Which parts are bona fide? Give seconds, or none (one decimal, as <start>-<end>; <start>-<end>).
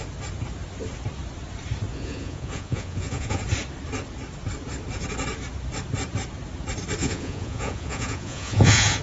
0.0-1.9; 3.4-7.0